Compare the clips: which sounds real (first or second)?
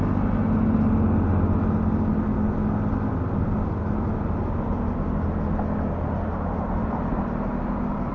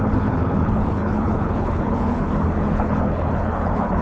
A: first